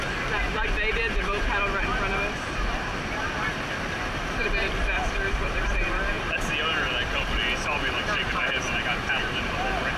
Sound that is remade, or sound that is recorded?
recorded